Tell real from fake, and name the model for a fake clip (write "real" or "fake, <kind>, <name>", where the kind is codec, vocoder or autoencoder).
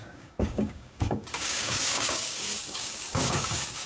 fake, codec, DAC